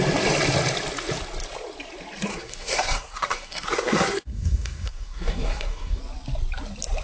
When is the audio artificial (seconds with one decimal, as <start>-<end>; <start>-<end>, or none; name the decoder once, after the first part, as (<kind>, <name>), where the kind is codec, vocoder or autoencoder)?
2.3-6.0 (codec, SNAC)